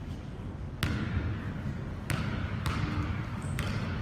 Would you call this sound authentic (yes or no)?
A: no